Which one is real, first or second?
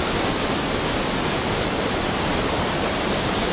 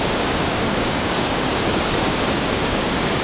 first